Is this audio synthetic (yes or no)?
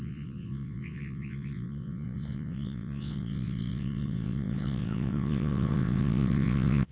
yes